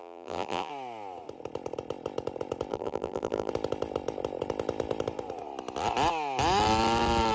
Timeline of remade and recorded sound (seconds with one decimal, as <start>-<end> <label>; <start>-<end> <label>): 0.0-0.7 remade; 0.7-2.7 recorded; 2.7-3.5 remade; 3.5-7.3 recorded